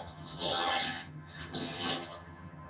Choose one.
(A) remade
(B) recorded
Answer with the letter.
A